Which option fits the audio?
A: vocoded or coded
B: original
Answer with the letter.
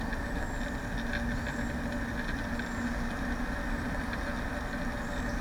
B